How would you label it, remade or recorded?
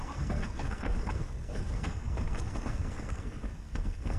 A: remade